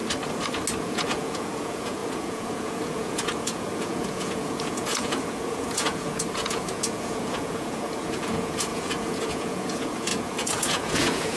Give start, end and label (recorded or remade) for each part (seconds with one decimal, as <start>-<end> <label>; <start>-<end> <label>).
0.0-0.8 recorded; 0.8-11.4 remade